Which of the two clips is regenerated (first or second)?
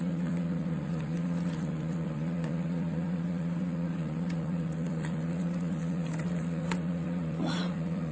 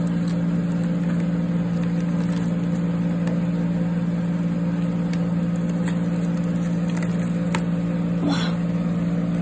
first